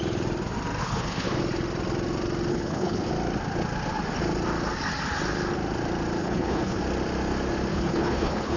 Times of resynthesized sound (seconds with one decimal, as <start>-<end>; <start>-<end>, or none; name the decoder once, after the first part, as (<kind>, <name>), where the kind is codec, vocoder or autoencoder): 0.8-1.4 (codec, HILCodec); 2.5-3.1; 6.2-6.8; 7.7-8.6